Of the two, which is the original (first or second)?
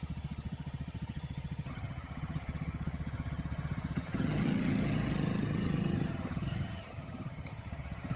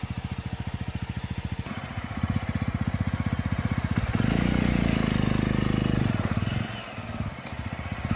second